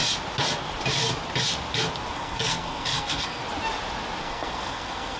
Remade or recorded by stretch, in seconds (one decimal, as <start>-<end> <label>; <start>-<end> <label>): 0.0-2.1 recorded; 2.1-3.4 remade; 3.4-4.2 recorded; 4.2-5.2 remade